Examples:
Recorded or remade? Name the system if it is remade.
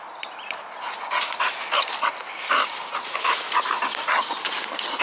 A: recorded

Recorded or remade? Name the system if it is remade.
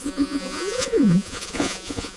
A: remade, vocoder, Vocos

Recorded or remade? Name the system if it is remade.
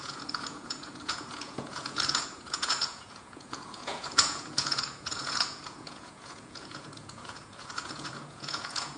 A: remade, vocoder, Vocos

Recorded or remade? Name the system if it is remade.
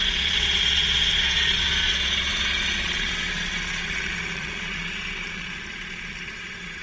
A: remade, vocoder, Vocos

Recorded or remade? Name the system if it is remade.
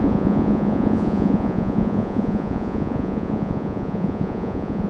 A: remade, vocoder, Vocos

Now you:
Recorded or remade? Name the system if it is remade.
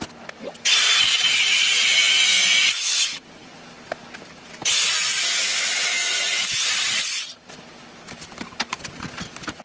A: recorded